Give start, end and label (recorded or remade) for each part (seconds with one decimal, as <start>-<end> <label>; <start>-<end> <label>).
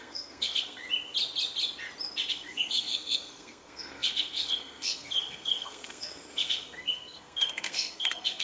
0.0-0.8 remade; 0.8-2.3 recorded; 2.3-8.4 remade